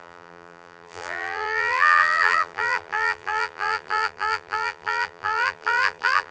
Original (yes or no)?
no